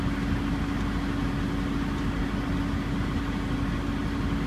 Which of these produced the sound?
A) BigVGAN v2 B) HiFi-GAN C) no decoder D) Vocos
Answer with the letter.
C